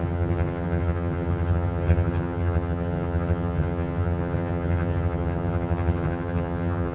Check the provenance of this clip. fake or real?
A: fake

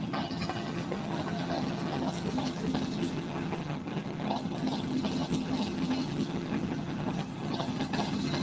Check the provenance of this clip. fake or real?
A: fake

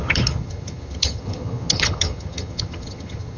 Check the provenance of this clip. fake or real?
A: fake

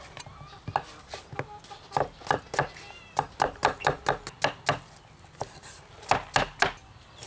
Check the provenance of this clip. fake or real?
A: real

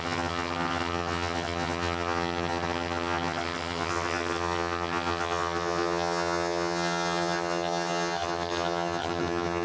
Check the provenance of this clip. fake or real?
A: fake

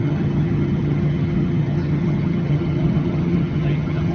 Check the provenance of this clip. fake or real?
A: fake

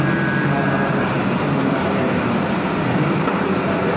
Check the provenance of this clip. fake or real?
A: real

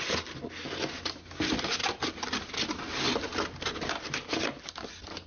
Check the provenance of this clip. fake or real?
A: real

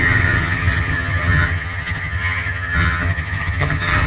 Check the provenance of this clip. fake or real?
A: fake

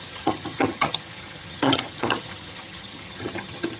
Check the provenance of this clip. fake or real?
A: fake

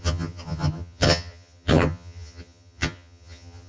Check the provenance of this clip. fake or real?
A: fake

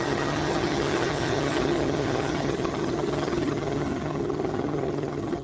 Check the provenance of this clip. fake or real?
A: fake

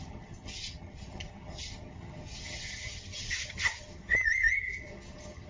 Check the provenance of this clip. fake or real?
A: fake